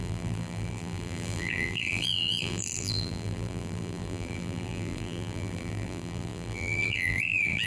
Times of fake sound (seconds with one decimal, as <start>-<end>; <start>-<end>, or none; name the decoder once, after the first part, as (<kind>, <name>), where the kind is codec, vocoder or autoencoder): 0.0-7.7 (vocoder, BigVGAN v2)